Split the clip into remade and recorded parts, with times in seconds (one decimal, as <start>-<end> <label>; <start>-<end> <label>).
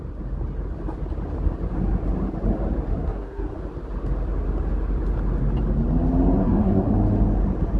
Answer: 0.0-2.9 recorded; 2.9-3.6 remade; 3.6-6.4 recorded; 6.4-6.9 remade; 6.9-7.8 recorded